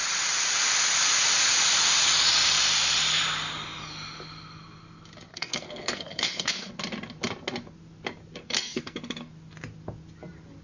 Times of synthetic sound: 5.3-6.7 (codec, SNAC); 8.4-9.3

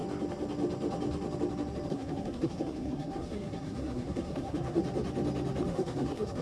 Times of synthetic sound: 1.9-4.8 (codec, SNAC); 5.7-6.4

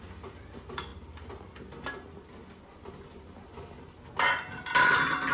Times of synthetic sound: none